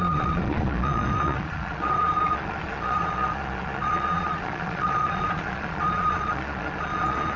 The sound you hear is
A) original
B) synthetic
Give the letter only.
B